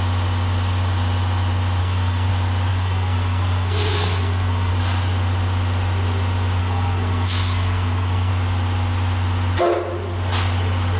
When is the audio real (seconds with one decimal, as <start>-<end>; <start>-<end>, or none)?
0.0-1.8; 2.3-2.7; 4.7-6.6; 8.3-11.0